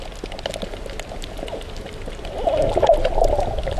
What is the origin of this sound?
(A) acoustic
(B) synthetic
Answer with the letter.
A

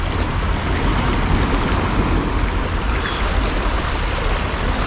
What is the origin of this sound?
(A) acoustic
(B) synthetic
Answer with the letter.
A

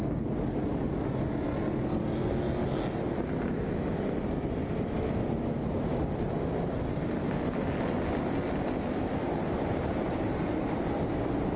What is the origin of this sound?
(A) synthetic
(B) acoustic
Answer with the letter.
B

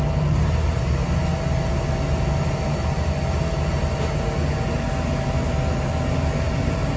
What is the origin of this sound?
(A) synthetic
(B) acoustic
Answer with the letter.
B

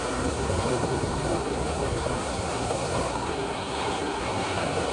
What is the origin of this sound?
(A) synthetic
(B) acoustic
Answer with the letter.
A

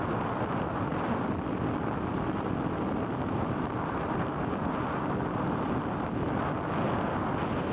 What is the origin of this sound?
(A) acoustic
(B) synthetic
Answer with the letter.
A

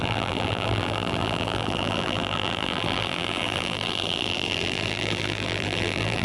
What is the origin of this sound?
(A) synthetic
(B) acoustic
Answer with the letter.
A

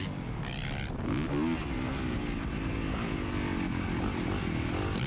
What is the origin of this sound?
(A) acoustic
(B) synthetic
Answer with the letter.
A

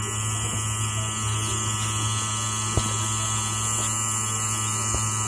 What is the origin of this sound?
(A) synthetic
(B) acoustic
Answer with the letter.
B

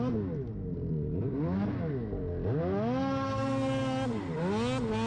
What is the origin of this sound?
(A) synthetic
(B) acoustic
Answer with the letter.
B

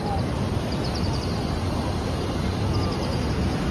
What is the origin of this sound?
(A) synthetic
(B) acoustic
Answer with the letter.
B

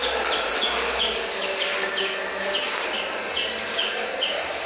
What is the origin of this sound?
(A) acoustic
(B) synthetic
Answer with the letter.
A